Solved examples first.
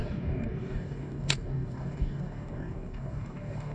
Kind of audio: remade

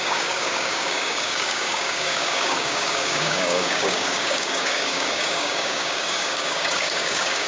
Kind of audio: remade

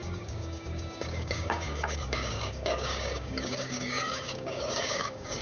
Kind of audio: remade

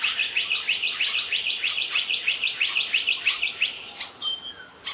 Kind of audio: recorded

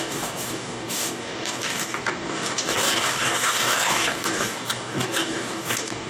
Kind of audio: remade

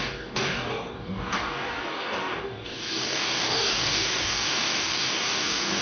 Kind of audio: remade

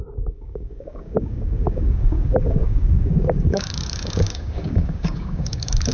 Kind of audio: remade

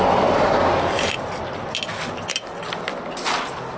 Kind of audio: recorded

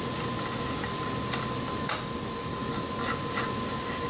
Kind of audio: recorded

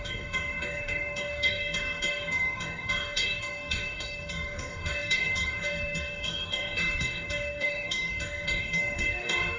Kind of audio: remade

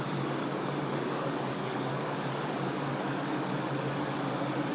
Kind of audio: remade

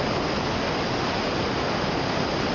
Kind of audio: recorded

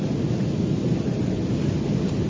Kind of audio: recorded